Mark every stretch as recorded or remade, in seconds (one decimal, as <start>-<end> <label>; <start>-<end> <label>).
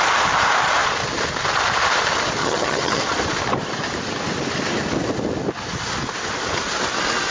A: 0.0-2.4 recorded; 2.4-3.0 remade; 3.0-7.3 recorded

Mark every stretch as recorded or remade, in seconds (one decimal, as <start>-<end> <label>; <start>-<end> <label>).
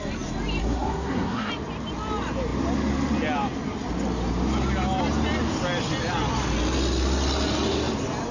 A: 0.0-0.6 recorded; 0.6-1.5 remade; 1.5-8.3 recorded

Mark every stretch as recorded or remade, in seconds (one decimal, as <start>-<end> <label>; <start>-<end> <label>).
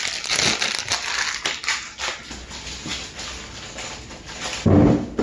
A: 0.0-5.2 recorded